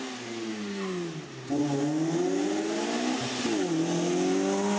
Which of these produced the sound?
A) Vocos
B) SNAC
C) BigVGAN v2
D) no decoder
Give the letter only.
D